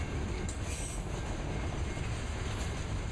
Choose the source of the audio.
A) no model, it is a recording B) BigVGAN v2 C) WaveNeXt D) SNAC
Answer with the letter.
A